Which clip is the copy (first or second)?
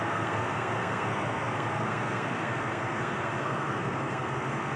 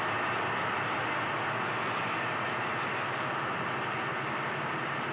first